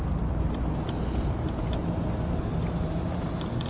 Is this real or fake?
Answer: real